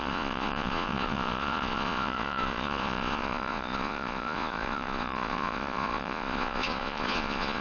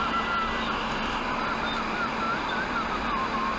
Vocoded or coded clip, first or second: first